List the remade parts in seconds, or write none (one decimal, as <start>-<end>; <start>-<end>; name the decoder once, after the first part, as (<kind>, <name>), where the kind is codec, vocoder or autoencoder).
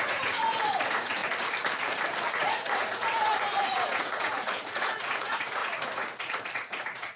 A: 0.0-1.2 (vocoder, Vocos); 2.3-7.2